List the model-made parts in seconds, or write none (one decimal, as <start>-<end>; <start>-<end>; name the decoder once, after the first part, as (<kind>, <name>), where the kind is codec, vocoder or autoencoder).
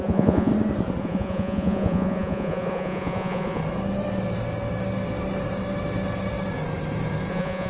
0.0-0.5 (vocoder, Vocos); 1.0-3.6; 7.3-7.7